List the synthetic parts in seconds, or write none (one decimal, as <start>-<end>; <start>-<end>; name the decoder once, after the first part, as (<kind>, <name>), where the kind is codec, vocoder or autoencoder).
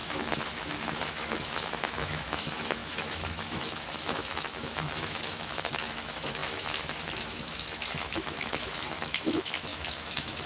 0.0-10.5 (autoencoder, DAC-VAE)